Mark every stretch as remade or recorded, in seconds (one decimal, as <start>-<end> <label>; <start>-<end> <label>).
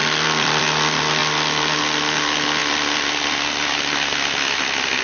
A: 0.0-0.6 remade; 0.6-1.2 recorded; 1.2-1.8 remade; 1.8-5.0 recorded